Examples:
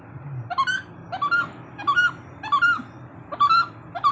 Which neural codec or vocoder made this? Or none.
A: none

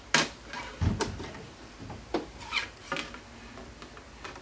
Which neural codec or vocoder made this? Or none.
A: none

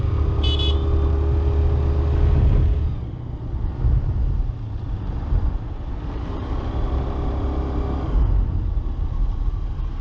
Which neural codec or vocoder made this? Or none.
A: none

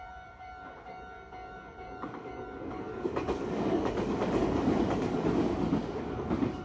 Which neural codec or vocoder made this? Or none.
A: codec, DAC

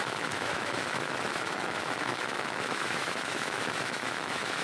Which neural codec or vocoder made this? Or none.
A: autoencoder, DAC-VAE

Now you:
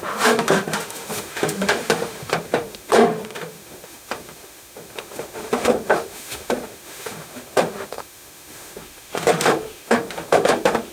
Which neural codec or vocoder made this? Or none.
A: autoencoder, DAC-VAE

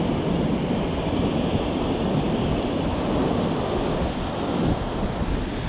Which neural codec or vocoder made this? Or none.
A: none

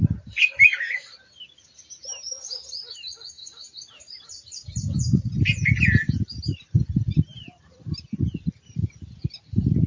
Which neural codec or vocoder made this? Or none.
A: none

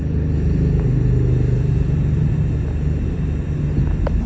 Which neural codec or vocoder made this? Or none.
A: none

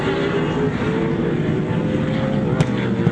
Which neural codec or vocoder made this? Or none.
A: none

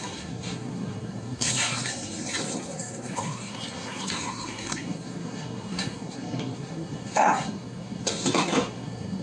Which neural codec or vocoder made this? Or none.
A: codec, SNAC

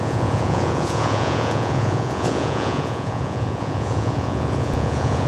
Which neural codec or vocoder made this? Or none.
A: vocoder, Vocos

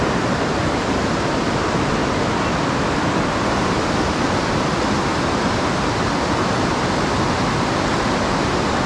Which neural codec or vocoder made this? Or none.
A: none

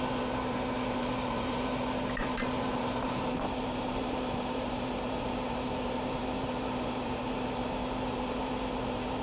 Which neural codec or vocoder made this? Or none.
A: vocoder, BigVGAN v2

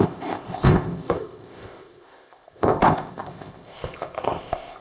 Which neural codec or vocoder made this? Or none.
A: codec, ZipCodec